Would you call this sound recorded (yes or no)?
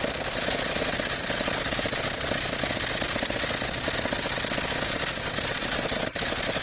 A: yes